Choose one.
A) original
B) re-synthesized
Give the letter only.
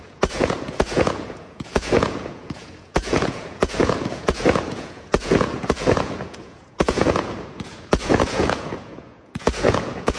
B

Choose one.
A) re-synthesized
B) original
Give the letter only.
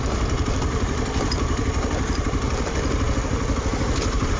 A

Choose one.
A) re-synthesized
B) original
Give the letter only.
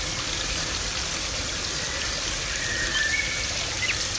B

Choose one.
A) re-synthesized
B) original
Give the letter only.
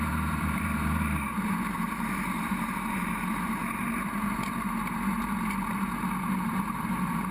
A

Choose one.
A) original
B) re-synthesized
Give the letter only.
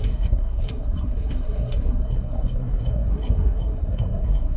B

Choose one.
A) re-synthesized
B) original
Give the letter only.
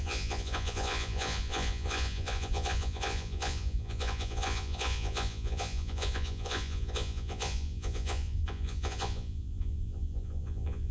A